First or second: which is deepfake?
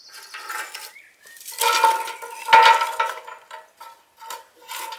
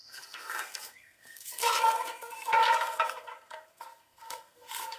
second